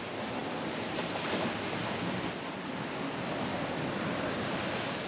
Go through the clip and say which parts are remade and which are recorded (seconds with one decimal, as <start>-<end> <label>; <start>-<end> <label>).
0.0-5.1 recorded